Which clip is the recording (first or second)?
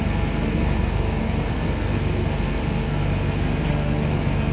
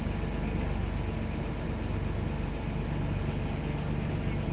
second